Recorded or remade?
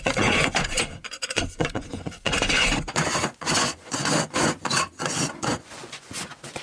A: remade